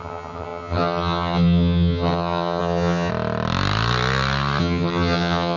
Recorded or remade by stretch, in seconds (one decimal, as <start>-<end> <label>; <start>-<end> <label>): 0.0-3.1 remade; 3.1-4.6 recorded; 4.6-5.6 remade